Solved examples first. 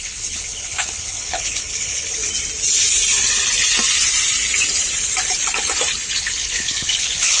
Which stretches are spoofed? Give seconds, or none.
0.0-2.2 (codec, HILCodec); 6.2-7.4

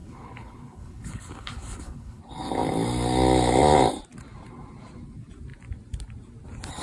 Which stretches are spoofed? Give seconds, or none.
0.0-2.2 (codec, HILCodec)

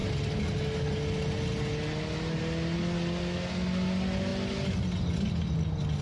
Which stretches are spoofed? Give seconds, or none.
none

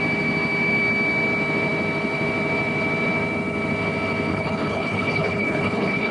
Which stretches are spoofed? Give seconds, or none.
4.3-6.1 (codec, HILCodec)

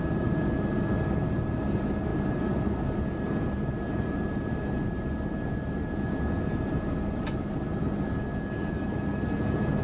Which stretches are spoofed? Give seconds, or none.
none

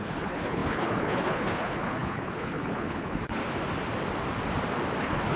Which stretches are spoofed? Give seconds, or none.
0.0-3.4 (codec, HILCodec); 5.0-5.4

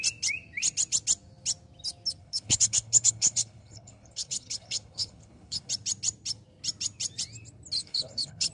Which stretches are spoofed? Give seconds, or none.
2.2-5.7 (codec, HILCodec); 7.8-8.5

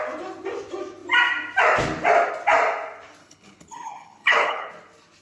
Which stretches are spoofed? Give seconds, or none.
3.2-4.7 (codec, HILCodec)